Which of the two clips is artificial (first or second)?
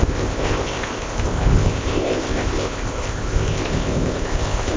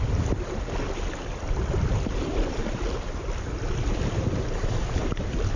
first